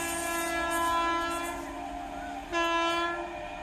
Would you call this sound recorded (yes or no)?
yes